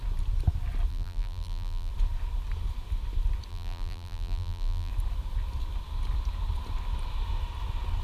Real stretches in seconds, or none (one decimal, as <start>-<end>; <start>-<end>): 0.0-0.9; 1.9-3.5; 4.9-8.0